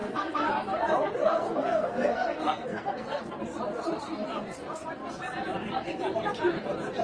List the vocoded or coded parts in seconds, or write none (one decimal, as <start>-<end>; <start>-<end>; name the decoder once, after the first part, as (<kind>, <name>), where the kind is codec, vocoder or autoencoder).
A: 0.0-0.5 (codec, SNAC); 1.2-3.2